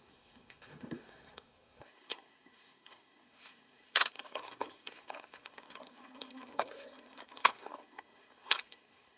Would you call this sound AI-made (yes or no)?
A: yes